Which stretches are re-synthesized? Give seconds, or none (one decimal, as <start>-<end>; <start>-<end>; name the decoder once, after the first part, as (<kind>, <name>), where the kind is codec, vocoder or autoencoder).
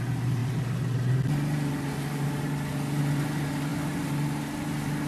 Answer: none